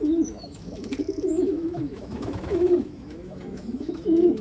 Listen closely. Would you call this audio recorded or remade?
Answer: remade